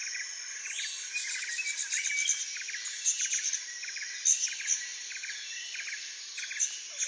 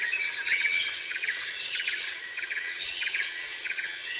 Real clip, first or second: first